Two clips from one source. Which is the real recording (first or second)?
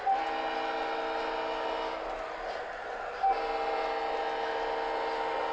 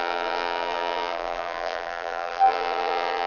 first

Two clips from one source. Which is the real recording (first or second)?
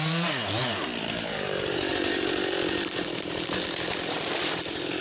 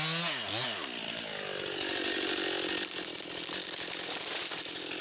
second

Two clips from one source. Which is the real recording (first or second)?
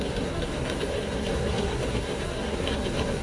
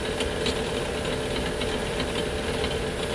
second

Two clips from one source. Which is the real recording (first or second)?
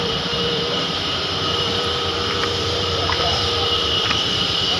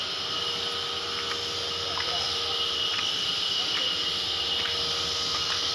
second